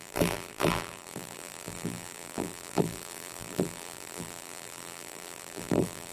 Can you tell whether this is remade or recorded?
remade